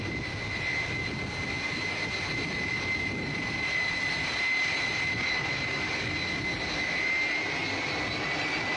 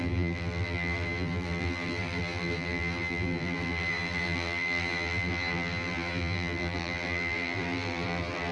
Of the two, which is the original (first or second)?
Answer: first